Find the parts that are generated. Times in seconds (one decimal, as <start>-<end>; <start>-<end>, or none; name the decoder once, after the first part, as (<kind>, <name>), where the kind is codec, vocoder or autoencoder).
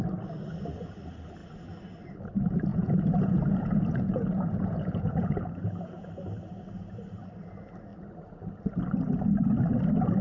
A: 2.7-6.1 (vocoder, Vocos)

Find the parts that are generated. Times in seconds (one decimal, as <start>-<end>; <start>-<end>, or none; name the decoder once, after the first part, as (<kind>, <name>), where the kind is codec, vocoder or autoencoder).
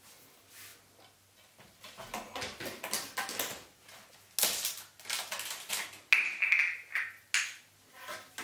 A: none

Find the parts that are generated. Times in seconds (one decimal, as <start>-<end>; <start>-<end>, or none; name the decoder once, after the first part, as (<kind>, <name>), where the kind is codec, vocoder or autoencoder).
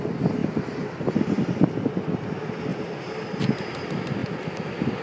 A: none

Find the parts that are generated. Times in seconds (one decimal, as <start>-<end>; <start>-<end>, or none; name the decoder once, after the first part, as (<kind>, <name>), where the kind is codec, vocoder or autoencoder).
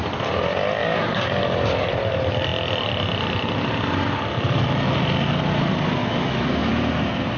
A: 0.8-1.9 (codec, DAC); 6.0-6.7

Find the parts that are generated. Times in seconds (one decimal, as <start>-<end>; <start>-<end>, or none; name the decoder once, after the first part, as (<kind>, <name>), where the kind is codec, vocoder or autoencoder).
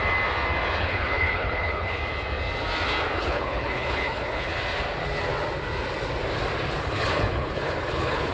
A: 0.8-2.0 (codec, HILCodec); 3.2-4.5; 6.8-8.3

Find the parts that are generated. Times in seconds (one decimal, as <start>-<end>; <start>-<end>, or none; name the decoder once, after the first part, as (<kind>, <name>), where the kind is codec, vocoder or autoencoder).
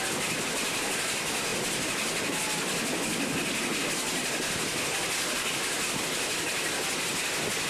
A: none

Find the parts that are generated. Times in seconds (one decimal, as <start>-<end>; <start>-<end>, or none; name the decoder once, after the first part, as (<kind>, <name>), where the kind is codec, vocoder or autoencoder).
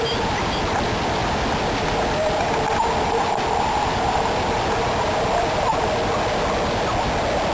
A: none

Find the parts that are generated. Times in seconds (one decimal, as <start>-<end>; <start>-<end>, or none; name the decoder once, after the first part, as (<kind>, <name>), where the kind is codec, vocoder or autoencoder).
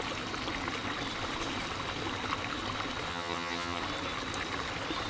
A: 3.1-3.8 (vocoder, HiFi-GAN)